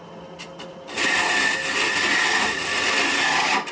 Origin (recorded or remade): recorded